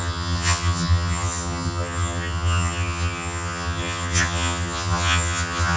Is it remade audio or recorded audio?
remade